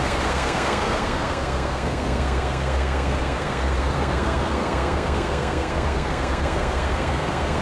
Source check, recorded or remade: remade